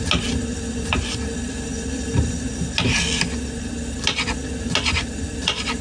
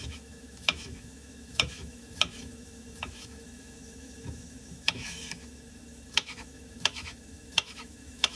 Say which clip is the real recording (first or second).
first